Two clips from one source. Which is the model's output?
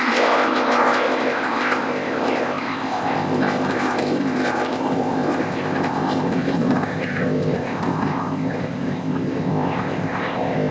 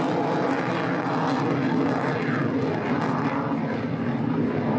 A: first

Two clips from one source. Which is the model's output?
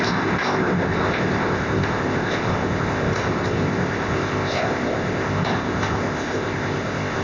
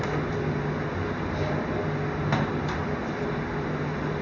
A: first